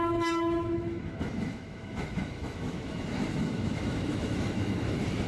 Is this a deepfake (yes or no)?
yes